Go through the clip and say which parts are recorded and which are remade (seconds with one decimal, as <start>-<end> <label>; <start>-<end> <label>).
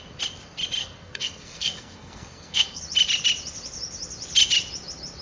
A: 0.0-0.8 recorded; 0.8-2.8 remade; 2.8-5.2 recorded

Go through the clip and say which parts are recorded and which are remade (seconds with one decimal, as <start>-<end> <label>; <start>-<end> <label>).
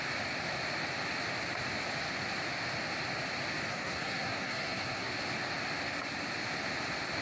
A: 0.0-3.7 recorded; 3.7-5.1 remade; 5.1-7.2 recorded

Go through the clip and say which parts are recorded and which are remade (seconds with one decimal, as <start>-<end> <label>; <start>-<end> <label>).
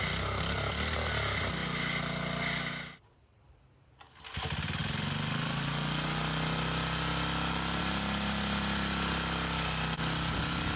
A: 0.0-10.8 recorded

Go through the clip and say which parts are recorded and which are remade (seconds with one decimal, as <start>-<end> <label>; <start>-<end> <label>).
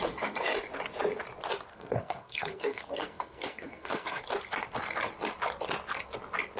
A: 0.0-1.7 recorded; 1.7-4.2 remade; 4.2-6.6 recorded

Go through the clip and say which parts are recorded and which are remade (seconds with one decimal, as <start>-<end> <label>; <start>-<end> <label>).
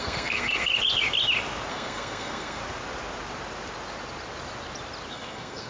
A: 0.0-0.7 remade; 0.7-1.7 recorded; 1.7-2.6 remade; 2.6-5.1 recorded; 5.1-5.7 remade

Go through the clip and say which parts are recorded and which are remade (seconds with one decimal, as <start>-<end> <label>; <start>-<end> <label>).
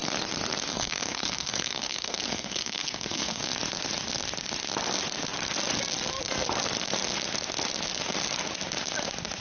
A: 0.0-0.7 recorded; 0.7-3.4 remade; 3.4-9.4 recorded